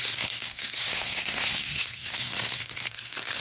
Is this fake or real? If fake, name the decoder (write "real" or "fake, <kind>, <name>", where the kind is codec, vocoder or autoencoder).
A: fake, codec, SNAC